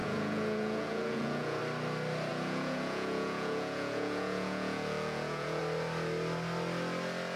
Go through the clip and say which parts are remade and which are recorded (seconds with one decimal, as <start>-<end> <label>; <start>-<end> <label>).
0.0-1.6 remade; 1.6-2.3 recorded; 2.3-5.6 remade; 5.6-7.4 recorded